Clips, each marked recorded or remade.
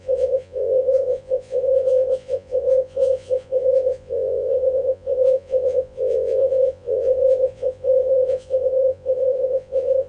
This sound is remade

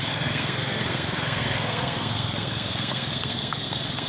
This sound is remade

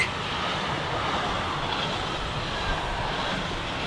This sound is recorded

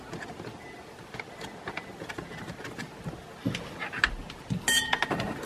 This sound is recorded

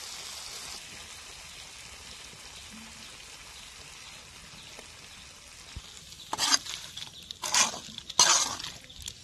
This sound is recorded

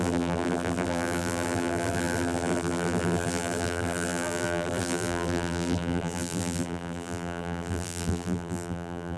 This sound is remade